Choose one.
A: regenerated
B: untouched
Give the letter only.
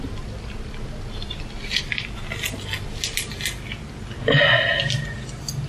B